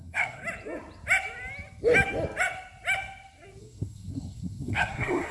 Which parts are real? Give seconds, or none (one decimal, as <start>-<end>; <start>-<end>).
0.4-3.6